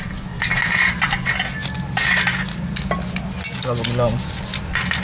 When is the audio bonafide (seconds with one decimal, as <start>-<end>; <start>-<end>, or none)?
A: 0.0-5.0